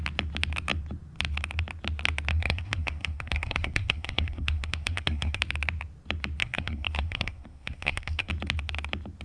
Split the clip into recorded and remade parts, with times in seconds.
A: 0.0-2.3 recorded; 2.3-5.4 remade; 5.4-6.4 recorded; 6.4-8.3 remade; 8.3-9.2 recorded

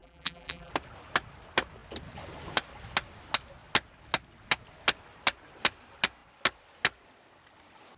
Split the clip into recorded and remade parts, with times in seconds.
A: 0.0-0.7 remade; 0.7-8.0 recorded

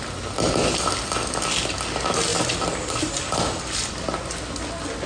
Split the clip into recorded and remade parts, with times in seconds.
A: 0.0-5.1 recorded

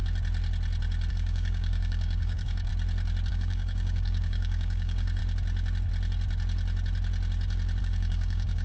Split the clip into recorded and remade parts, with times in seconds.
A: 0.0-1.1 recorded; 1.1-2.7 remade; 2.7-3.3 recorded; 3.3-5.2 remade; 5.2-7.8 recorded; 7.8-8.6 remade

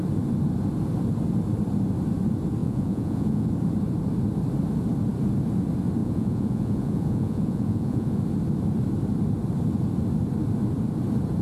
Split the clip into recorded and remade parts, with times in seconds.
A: 0.0-2.6 recorded; 2.6-3.5 remade; 3.5-6.0 recorded; 6.0-8.2 remade; 8.2-11.4 recorded